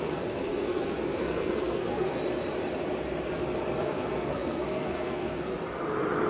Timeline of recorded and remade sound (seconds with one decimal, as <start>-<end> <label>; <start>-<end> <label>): 0.0-2.2 remade; 2.2-3.8 recorded; 3.8-5.5 remade; 5.5-6.3 recorded